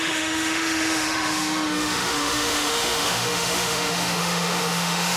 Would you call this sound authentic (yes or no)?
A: no